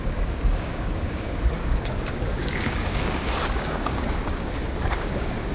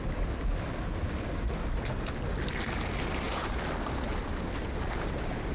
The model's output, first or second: first